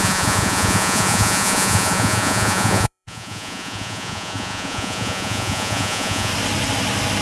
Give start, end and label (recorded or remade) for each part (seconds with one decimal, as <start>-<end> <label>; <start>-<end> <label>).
0.0-6.3 remade; 6.3-7.2 recorded